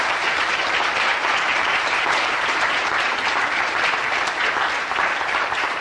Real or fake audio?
fake